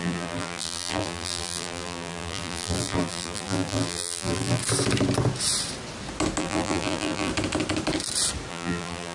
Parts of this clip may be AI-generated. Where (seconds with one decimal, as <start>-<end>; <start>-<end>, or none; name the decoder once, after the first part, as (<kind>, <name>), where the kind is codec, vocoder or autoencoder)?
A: 0.0-4.6 (vocoder, BigVGAN v2); 6.4-7.3; 8.5-9.1